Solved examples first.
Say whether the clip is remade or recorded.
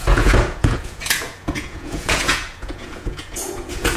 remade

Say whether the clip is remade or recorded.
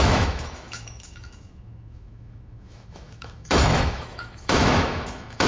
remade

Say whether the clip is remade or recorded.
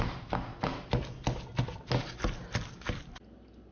recorded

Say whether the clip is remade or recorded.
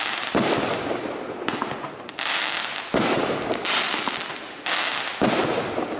recorded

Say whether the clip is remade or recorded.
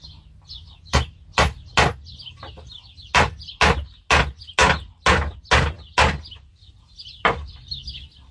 recorded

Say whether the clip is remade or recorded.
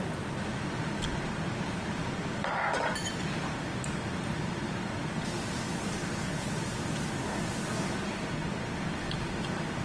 recorded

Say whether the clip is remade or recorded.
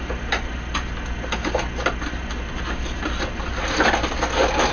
recorded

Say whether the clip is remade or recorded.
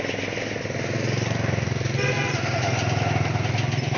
recorded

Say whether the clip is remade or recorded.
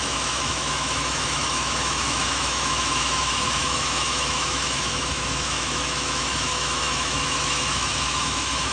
remade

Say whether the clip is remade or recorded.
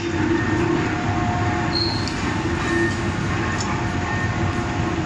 recorded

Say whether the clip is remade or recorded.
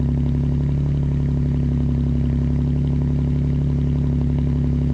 recorded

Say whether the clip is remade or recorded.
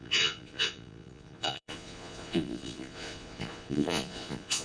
remade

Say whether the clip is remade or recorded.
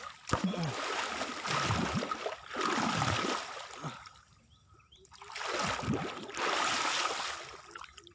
recorded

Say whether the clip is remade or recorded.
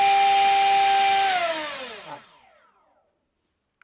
recorded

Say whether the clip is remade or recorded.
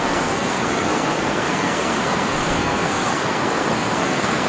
remade